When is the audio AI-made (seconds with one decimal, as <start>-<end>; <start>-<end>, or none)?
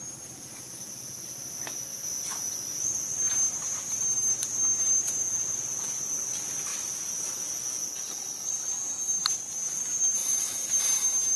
6.7-7.3; 10.2-10.8